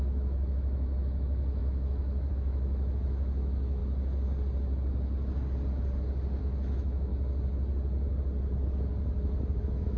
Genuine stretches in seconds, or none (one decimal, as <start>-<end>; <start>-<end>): 3.8-6.4; 7.1-9.6